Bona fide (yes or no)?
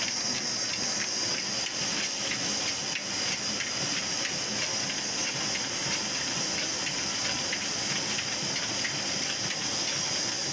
yes